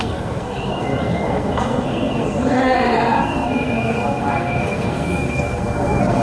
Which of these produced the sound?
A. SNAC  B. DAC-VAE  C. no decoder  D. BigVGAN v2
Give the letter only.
A